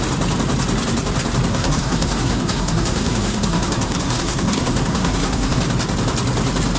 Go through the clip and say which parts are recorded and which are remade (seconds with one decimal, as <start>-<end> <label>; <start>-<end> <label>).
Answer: 0.0-1.5 recorded; 1.5-5.6 remade; 5.6-6.8 recorded